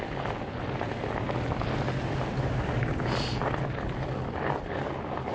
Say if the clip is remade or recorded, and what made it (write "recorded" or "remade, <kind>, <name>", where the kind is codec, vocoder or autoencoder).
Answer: recorded